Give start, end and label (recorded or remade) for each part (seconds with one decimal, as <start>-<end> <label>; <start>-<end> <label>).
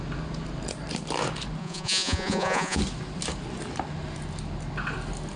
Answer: 0.0-1.6 recorded; 1.6-2.8 remade; 2.8-5.4 recorded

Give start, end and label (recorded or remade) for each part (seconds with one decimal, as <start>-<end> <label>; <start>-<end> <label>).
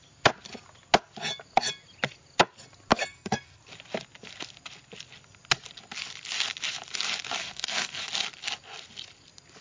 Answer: 0.0-2.9 recorded; 2.9-3.6 remade; 3.6-7.4 recorded; 7.4-8.0 remade; 8.0-9.6 recorded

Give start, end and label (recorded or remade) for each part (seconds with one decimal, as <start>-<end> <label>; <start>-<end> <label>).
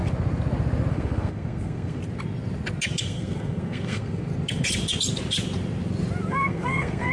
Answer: 0.0-0.9 recorded; 0.9-2.0 remade; 2.0-3.0 recorded; 3.0-4.3 remade; 4.3-6.3 recorded; 6.3-7.1 remade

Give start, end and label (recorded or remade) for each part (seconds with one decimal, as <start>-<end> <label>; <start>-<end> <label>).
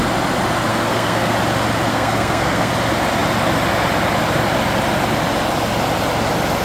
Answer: 0.0-0.7 recorded; 0.7-1.3 remade; 1.3-1.9 recorded; 1.9-2.7 remade; 2.7-6.6 recorded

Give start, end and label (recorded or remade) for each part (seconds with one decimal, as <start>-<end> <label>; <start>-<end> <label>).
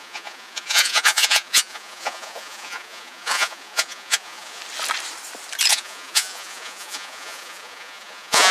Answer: 0.0-4.6 remade; 4.6-5.7 recorded; 5.7-8.5 remade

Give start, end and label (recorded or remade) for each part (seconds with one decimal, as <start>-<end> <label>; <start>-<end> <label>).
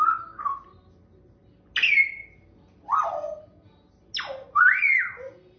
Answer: 0.0-5.6 recorded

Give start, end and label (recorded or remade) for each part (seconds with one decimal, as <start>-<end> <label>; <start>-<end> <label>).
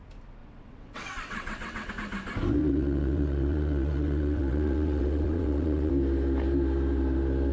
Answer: 0.0-0.4 recorded; 0.4-1.9 remade; 1.9-2.6 recorded; 2.6-5.9 remade; 5.9-7.5 recorded